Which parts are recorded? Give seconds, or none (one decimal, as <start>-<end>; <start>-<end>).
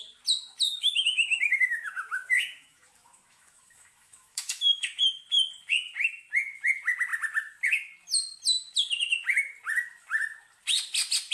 0.0-0.7; 5.0-11.3